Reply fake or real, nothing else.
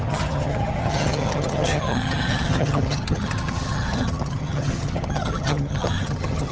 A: fake